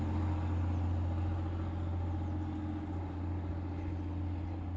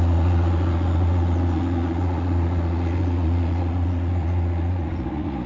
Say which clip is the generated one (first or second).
second